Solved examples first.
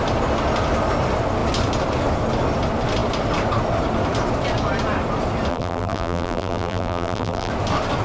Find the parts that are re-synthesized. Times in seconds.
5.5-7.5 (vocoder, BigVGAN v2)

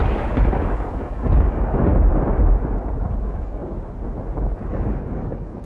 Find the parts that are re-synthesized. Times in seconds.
0.0-1.9 (codec, DAC); 3.2-3.6; 4.7-5.7

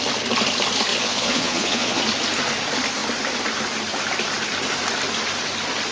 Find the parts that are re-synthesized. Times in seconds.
0.9-2.0 (vocoder, Vocos)

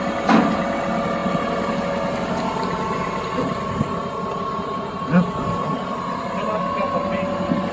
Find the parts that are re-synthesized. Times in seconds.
none